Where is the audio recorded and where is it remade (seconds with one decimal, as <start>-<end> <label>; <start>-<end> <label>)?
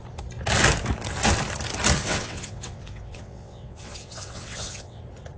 0.0-2.0 recorded; 2.0-5.0 remade; 5.0-5.4 recorded